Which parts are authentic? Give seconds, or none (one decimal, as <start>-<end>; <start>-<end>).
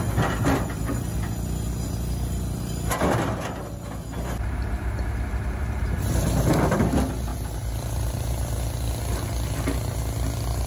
0.0-5.6; 6.1-7.3; 8.5-10.7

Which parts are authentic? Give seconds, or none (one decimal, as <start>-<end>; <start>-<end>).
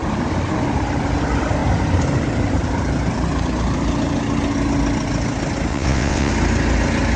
0.0-5.7; 6.3-7.2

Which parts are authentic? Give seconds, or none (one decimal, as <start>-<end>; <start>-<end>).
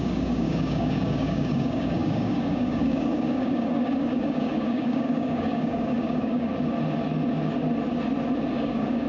6.5-8.5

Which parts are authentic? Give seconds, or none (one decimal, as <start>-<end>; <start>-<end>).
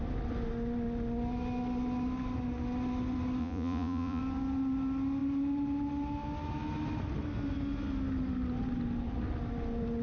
0.0-3.4; 4.2-10.0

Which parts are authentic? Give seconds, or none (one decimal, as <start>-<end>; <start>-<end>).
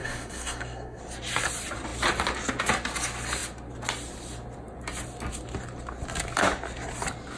1.0-7.4